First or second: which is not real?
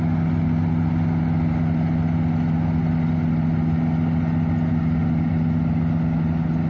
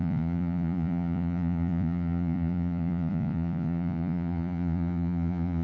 second